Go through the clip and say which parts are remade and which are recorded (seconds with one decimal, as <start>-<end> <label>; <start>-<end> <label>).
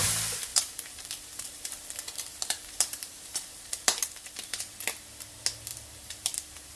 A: 0.0-0.5 recorded; 0.5-4.6 remade; 4.6-5.7 recorded; 5.7-6.8 remade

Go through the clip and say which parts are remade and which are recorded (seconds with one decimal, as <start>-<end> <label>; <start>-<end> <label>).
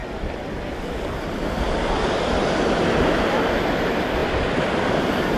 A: 0.0-5.4 recorded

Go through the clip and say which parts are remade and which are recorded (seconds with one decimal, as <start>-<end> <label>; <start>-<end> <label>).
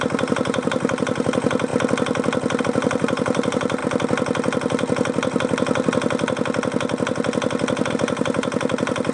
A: 0.0-1.7 remade; 1.7-2.6 recorded; 2.6-3.8 remade; 3.8-7.9 recorded; 7.9-9.1 remade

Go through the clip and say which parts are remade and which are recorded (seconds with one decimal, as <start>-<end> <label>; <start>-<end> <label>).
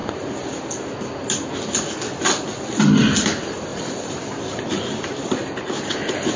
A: 0.0-3.7 recorded; 3.7-5.6 remade; 5.6-6.4 recorded